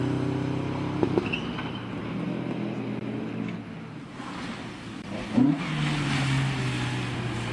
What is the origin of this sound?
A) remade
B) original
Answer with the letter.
B